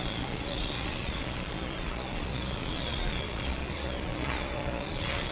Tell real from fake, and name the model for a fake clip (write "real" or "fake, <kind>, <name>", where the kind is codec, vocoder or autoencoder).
fake, vocoder, Vocos